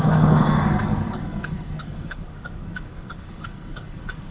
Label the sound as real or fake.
fake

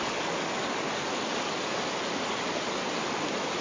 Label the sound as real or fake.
real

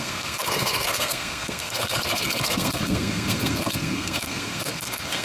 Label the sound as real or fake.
fake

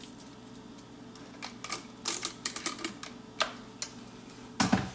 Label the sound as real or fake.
real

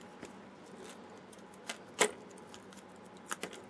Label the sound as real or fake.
real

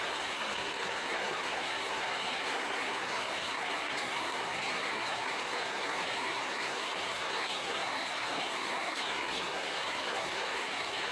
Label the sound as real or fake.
fake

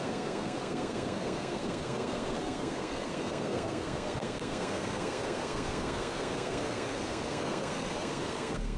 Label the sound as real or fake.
fake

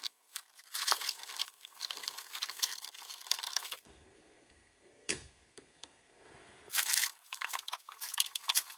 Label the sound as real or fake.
fake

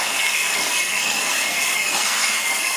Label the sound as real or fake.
fake